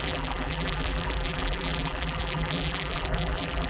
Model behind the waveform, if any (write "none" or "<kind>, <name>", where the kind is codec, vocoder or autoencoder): vocoder, BigVGAN v2